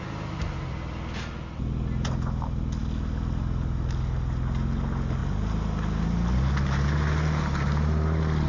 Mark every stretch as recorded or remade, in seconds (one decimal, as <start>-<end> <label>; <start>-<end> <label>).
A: 0.0-8.5 recorded